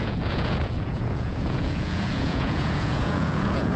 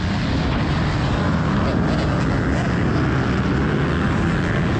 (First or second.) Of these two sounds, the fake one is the first